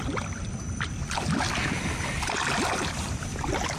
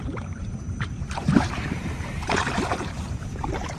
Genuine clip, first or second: first